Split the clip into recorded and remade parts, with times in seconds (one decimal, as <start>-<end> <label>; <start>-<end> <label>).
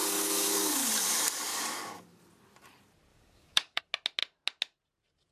0.0-0.9 remade; 0.9-1.5 recorded; 1.5-2.2 remade; 2.2-3.1 recorded; 3.1-3.8 remade; 3.8-5.3 recorded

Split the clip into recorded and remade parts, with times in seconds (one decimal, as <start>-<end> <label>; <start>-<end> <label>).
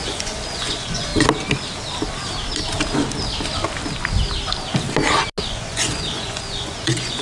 0.0-1.1 remade; 1.1-5.4 recorded; 5.4-7.2 remade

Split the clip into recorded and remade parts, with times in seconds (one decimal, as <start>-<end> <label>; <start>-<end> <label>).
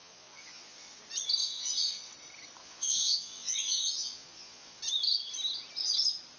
0.0-1.0 remade; 1.0-1.4 recorded; 1.4-2.1 remade; 2.1-2.6 recorded; 2.6-4.8 remade; 4.8-6.4 recorded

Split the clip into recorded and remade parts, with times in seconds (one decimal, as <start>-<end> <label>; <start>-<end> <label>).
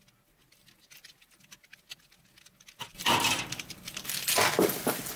0.0-2.9 recorded; 2.9-4.1 remade; 4.1-5.2 recorded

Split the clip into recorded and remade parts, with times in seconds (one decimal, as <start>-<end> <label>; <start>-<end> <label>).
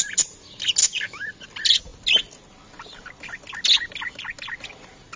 0.0-0.8 recorded; 0.8-1.3 remade; 1.3-5.2 recorded